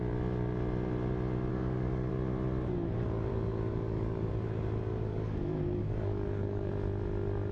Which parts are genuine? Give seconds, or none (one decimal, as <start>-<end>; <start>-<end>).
0.0-1.5; 2.1-3.3; 4.3-4.9; 6.7-7.5